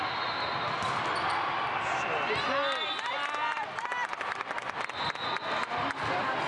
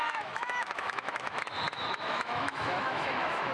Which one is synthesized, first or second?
second